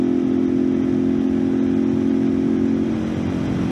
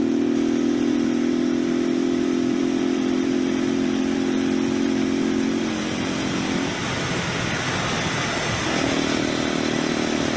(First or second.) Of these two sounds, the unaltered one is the first